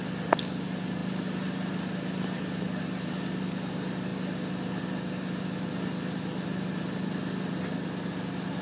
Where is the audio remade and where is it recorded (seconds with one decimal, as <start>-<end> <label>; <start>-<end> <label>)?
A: 0.0-8.6 recorded